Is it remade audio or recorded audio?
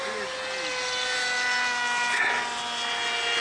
recorded